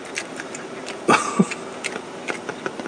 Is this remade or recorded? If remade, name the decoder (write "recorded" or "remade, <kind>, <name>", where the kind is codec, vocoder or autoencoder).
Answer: recorded